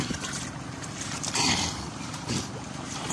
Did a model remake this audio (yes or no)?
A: yes